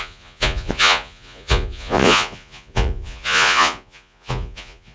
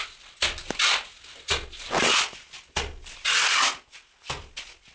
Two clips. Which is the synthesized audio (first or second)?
first